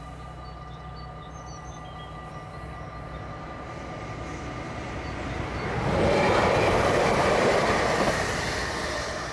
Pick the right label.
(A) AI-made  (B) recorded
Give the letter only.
B